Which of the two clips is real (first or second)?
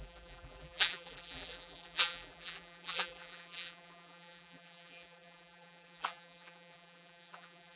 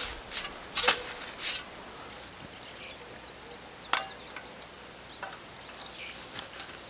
second